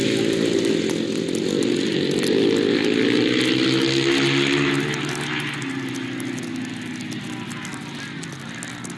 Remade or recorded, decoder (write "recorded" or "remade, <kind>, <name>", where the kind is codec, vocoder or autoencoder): recorded